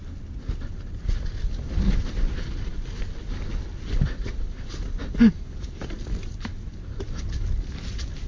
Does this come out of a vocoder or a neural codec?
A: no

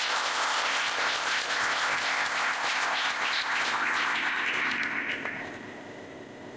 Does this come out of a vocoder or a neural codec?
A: yes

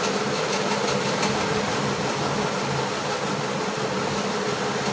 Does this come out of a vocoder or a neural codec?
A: no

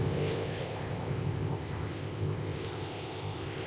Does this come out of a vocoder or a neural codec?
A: yes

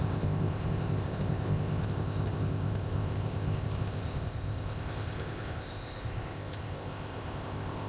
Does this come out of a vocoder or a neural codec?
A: yes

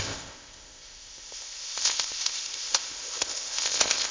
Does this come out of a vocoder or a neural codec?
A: yes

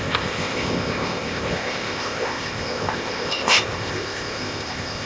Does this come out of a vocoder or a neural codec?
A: yes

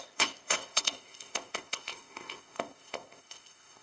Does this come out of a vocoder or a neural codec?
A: yes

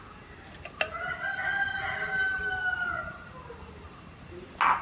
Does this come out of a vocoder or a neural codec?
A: no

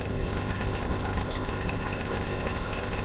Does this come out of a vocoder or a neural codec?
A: yes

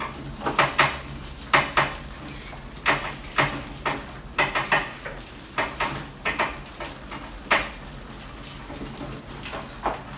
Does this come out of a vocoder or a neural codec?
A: no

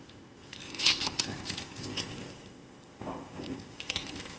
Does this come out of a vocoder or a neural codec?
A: yes